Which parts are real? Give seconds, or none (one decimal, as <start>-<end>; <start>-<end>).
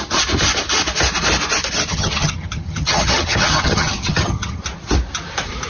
0.0-1.9; 4.6-5.7